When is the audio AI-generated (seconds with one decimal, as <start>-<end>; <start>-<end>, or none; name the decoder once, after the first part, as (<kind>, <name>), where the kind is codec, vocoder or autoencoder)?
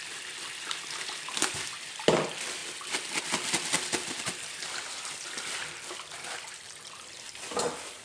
0.0-2.6 (vocoder, BigVGAN v2); 3.2-8.0